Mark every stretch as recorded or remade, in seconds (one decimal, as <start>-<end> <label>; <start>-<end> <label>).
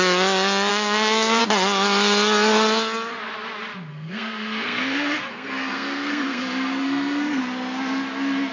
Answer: 0.0-0.7 recorded; 0.7-1.4 remade; 1.4-3.9 recorded; 3.9-7.4 remade; 7.4-8.5 recorded